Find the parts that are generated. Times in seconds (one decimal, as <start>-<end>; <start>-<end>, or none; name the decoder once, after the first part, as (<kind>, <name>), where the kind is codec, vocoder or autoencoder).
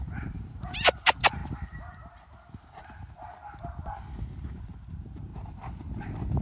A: 0.0-1.4 (vocoder, BigVGAN v2); 4.5-5.3; 6.0-6.4